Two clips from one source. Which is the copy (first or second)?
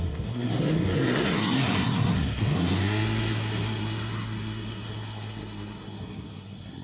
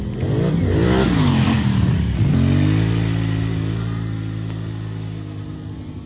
first